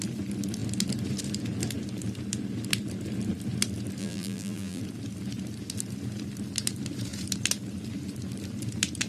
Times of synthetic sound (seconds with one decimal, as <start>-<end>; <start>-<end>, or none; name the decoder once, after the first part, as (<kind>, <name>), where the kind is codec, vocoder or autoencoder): 4.0-4.8 (vocoder, BigVGAN v2)